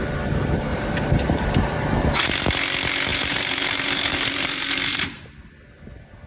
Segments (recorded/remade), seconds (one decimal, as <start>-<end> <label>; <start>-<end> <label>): 0.0-0.7 recorded; 0.7-2.3 remade; 2.3-3.1 recorded; 3.1-5.2 remade; 5.2-6.3 recorded